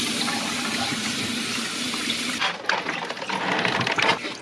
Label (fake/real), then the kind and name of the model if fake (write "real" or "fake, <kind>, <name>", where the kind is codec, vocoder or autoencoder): real